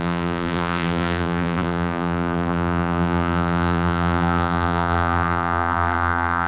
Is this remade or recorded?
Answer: remade